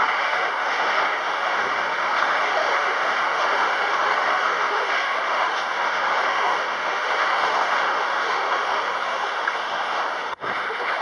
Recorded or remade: remade